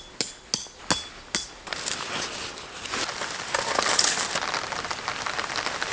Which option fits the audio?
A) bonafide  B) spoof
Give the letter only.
A